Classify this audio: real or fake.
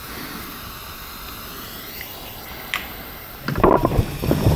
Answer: fake